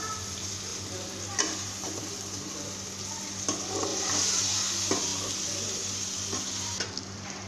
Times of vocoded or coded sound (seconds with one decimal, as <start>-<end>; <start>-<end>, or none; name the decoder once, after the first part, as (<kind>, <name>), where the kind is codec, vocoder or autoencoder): 3.9-4.4 (vocoder, BigVGAN v2)